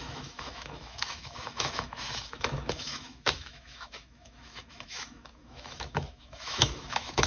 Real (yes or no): no